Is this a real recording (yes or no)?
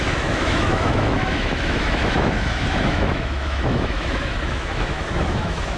no